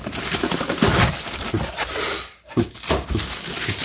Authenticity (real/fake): real